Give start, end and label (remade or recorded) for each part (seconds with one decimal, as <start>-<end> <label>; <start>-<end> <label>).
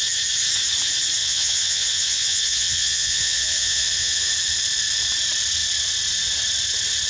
0.0-1.2 recorded; 1.2-4.3 remade; 4.3-7.1 recorded